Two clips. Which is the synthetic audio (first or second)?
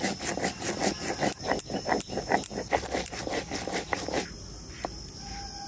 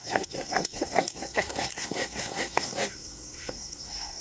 second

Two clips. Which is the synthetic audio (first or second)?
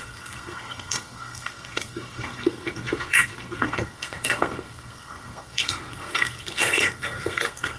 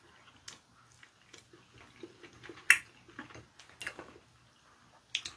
first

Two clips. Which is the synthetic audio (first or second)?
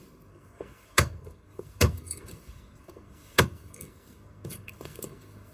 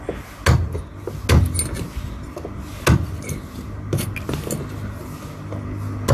first